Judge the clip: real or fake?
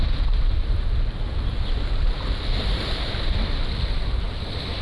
real